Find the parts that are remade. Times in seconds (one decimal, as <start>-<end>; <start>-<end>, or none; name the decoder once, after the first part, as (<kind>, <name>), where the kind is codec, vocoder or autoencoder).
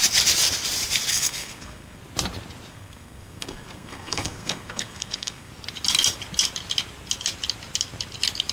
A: 1.1-2.0 (codec, SNAC); 2.7-5.5